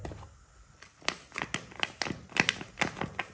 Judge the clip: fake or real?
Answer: real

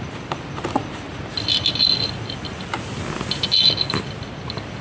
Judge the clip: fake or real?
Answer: real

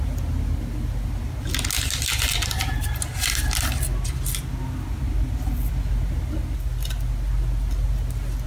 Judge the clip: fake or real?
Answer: real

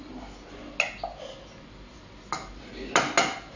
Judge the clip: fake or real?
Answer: real